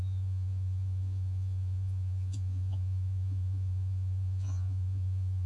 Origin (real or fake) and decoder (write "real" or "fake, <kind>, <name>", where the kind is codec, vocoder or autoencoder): fake, vocoder, Vocos